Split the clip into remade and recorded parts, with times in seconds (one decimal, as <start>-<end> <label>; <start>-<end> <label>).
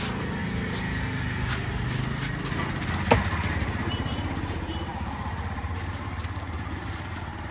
0.0-0.4 remade; 0.4-3.5 recorded; 3.5-7.5 remade